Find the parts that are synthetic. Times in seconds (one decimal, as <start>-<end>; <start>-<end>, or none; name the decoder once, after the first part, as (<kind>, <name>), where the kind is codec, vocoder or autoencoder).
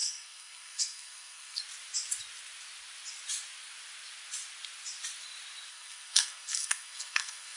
0.0-1.6 (codec, SNAC); 5.7-7.6